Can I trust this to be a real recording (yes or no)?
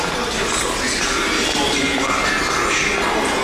yes